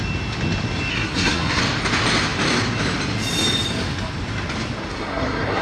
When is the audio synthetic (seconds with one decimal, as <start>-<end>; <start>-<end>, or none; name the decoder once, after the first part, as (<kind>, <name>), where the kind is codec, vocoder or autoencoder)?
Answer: 0.9-1.6 (codec, SNAC); 4.9-5.6